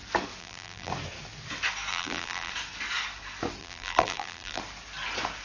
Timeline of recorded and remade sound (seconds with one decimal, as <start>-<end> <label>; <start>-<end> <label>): 0.0-0.4 recorded; 0.4-0.9 remade; 0.9-1.9 recorded; 1.9-2.5 remade; 2.5-3.6 recorded; 3.6-4.6 remade; 4.6-5.4 recorded